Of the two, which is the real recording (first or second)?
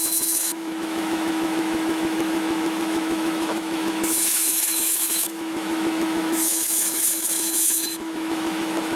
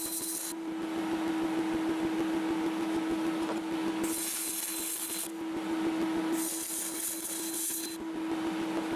second